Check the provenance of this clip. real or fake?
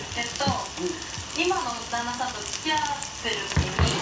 real